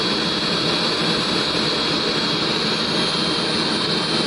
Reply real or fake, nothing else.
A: real